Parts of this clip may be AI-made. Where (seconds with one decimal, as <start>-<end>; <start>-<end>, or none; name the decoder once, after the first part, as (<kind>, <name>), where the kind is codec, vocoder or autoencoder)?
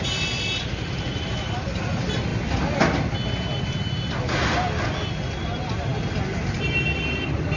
none